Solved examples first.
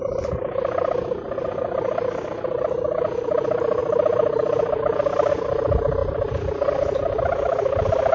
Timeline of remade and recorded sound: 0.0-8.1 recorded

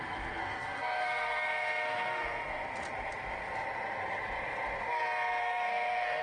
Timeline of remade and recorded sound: 0.0-0.4 recorded; 0.4-2.4 remade; 2.4-5.4 recorded; 5.4-6.2 remade

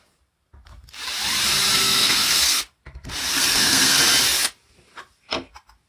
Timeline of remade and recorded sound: 0.0-1.8 recorded; 1.8-2.6 remade; 2.6-3.3 recorded; 3.3-4.0 remade; 4.0-5.9 recorded

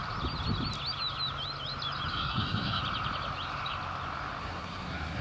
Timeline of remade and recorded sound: 0.0-2.1 recorded; 2.1-2.8 remade; 2.8-4.4 recorded; 4.4-5.2 remade

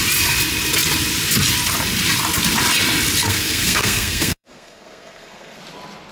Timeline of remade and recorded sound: 0.0-3.2 recorded; 3.2-5.6 remade; 5.6-6.1 recorded

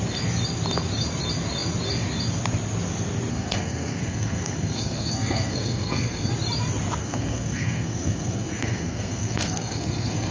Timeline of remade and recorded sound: 0.0-3.3 recorded; 3.3-6.3 remade; 6.3-7.0 recorded; 7.0-10.3 remade

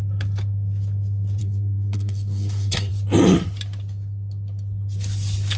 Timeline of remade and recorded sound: 0.0-1.4 recorded; 1.4-2.9 remade; 2.9-5.6 recorded

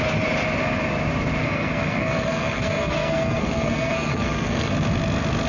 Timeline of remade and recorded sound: 0.0-1.4 recorded; 1.4-4.7 remade; 4.7-5.5 recorded